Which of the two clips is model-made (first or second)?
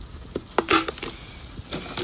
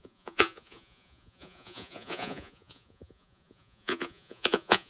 second